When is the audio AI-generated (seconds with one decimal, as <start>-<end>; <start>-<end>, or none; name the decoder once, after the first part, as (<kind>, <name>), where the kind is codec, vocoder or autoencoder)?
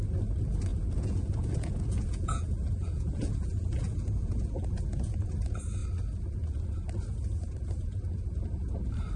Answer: 0.7-4.8 (vocoder, Vocos)